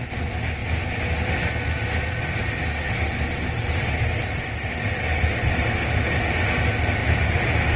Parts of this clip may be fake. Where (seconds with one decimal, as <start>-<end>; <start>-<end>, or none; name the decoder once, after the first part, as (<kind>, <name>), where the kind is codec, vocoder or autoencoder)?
none